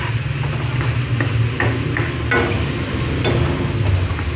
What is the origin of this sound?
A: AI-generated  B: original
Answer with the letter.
B